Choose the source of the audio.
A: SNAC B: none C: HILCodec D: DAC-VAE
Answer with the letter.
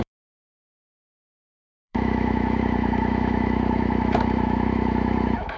D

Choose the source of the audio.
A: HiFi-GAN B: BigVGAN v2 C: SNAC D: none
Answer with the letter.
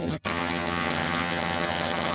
A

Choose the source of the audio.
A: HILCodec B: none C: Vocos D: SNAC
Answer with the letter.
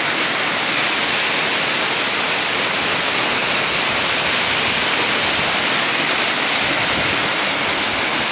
B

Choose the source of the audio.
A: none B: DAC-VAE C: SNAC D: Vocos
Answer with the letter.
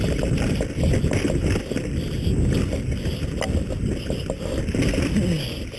A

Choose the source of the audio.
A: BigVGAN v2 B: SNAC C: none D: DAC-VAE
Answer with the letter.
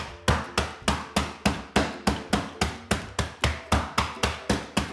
C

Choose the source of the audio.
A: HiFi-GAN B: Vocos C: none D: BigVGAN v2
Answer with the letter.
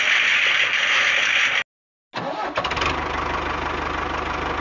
C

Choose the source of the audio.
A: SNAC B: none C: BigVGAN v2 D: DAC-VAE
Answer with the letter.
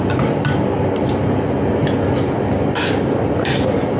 B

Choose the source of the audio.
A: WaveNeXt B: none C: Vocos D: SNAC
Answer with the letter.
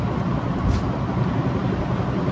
B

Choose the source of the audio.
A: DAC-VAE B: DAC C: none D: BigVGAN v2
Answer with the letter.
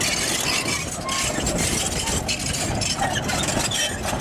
C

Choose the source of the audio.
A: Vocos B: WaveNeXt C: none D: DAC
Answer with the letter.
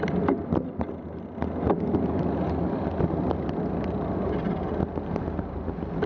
C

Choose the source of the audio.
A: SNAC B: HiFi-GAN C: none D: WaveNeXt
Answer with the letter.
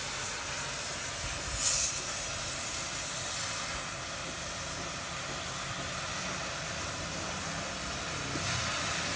C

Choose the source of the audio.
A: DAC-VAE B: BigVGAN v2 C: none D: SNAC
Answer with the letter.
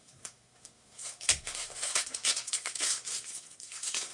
D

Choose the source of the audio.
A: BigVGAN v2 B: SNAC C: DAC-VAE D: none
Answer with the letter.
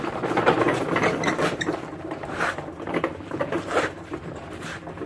A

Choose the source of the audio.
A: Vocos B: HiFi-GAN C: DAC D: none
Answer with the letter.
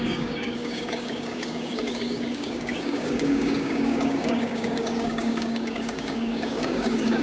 C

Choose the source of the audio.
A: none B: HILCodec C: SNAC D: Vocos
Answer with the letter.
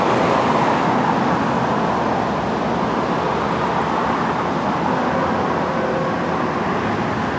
A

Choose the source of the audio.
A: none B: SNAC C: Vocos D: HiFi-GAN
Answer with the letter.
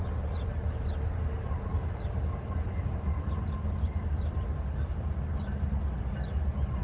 A